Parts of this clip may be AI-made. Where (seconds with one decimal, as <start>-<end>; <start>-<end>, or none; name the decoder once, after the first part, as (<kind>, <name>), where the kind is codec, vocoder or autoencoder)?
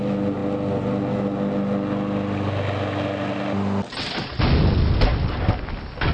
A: none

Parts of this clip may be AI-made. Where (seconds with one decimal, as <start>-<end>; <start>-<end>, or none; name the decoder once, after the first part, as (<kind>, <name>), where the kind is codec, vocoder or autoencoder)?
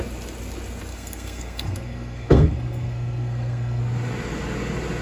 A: 0.9-3.8 (codec, SNAC)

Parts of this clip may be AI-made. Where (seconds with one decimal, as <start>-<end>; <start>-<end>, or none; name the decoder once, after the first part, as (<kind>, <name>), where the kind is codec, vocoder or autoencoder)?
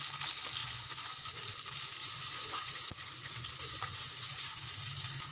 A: 0.6-1.4 (vocoder, Vocos); 2.0-4.7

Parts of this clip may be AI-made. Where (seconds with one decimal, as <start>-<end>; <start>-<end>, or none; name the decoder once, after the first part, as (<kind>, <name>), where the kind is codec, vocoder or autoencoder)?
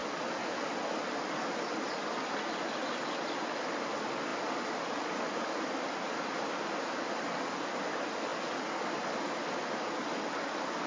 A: none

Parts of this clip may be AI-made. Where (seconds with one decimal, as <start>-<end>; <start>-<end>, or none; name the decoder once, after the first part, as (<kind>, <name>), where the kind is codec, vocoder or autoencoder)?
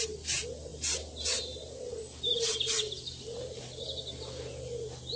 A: none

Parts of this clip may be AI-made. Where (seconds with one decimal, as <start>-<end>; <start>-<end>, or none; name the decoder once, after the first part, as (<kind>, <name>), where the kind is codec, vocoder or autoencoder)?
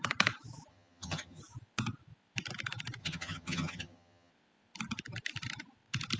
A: 0.7-1.4 (vocoder, HiFi-GAN); 3.0-4.3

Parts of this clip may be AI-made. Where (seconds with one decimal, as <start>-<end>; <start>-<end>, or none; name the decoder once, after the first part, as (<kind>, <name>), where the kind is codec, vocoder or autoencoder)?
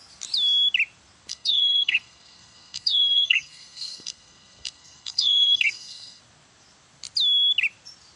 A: 1.3-6.2 (codec, SNAC)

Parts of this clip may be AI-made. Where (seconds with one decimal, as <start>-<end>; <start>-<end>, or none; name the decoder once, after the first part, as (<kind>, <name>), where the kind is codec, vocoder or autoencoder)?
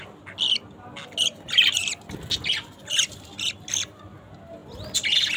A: none